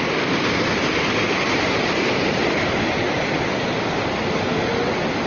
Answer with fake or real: real